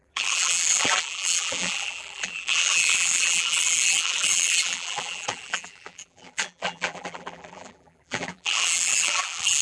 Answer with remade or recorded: remade